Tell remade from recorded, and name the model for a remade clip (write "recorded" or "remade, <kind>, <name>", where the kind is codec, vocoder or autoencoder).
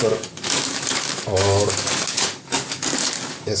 remade, codec, DAC